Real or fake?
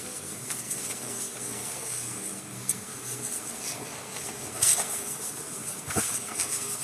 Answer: fake